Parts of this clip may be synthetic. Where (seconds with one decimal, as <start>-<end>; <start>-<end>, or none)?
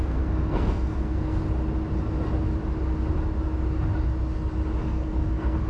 0.0-1.4; 4.8-5.7